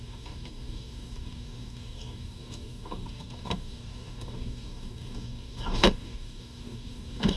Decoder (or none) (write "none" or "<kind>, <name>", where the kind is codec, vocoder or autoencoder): codec, DAC